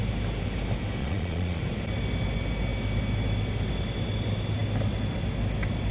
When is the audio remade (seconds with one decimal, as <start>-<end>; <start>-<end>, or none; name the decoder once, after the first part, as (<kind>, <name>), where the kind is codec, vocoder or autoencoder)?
1.0-1.6 (vocoder, Vocos)